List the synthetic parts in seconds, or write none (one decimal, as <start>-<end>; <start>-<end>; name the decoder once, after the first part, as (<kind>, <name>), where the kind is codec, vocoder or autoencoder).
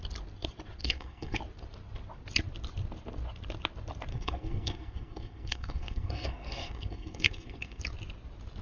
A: 0.8-1.4 (codec, SNAC); 4.1-7.8